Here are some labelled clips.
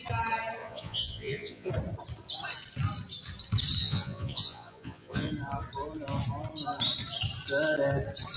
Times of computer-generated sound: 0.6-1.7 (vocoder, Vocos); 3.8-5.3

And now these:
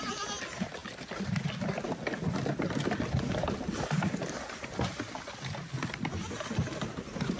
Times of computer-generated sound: none

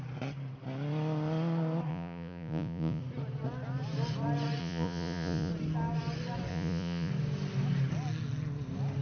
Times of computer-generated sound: 1.9-3.0 (vocoder, Vocos); 4.6-5.5; 6.5-7.1

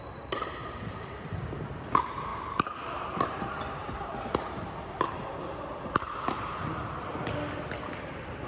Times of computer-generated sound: 0.0-5.7 (vocoder, BigVGAN v2)